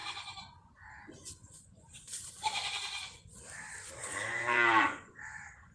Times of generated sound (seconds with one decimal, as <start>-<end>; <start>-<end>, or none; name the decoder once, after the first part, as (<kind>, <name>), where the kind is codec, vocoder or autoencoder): 0.0-3.4 (vocoder, Vocos); 4.0-5.2